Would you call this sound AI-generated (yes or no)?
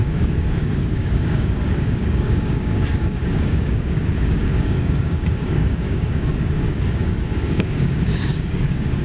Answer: yes